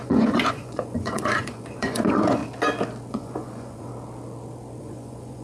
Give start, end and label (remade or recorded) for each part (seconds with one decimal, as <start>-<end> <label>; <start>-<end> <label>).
0.0-2.4 remade; 2.4-3.1 recorded; 3.1-3.9 remade; 3.9-4.8 recorded; 4.8-5.4 remade